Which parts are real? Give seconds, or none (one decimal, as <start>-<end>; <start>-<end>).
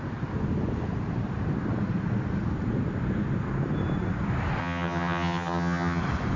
0.0-4.6; 6.0-6.4